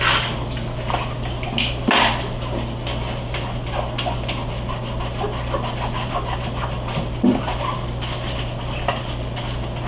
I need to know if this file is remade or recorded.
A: recorded